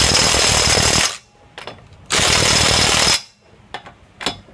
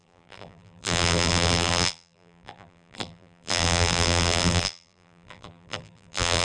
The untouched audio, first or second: first